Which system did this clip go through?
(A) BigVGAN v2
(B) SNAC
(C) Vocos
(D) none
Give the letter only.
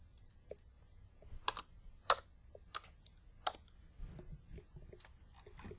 D